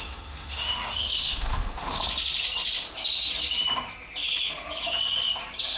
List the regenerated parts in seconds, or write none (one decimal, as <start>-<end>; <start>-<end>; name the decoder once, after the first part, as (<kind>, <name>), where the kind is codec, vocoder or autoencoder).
0.0-2.0 (autoencoder, DAC-VAE)